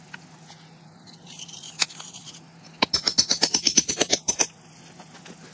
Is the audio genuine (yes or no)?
yes